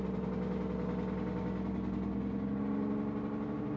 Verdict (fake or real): real